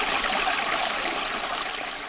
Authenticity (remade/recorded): recorded